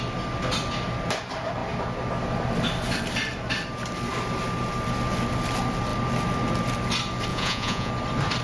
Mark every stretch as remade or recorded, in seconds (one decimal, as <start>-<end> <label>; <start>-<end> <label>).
0.0-7.3 recorded; 7.3-7.9 remade; 7.9-8.4 recorded

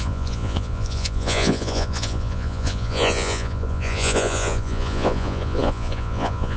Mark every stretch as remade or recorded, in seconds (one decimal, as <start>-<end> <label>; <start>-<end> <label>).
0.0-6.6 remade

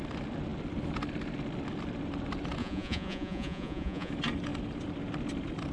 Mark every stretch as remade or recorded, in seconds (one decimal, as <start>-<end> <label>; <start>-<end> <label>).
0.0-2.6 recorded; 2.6-4.1 remade; 4.1-5.7 recorded

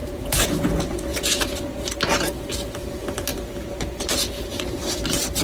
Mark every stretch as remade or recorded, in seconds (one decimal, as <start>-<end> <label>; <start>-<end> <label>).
0.0-1.6 remade; 1.6-5.4 recorded

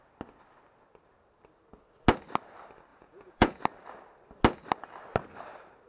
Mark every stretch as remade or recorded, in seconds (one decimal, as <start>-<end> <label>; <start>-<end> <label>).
0.0-2.9 recorded; 2.9-3.6 remade; 3.6-5.9 recorded